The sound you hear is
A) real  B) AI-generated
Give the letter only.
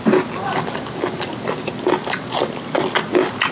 A